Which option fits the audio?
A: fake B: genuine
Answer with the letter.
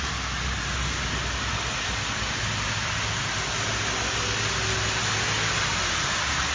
B